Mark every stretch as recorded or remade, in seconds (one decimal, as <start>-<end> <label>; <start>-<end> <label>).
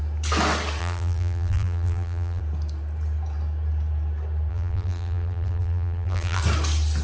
0.0-0.8 recorded; 0.8-2.4 remade; 2.4-4.5 recorded; 4.5-6.4 remade; 6.4-7.0 recorded